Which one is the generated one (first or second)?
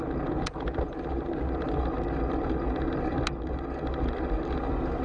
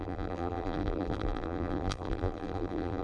second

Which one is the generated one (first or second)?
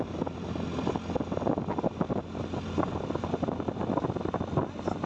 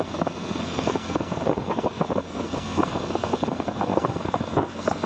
second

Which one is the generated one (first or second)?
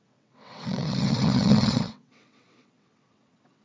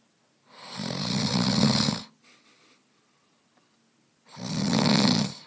first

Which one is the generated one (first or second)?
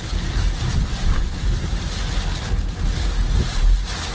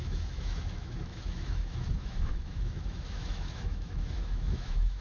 second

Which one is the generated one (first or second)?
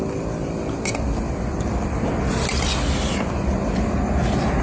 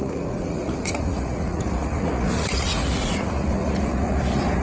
second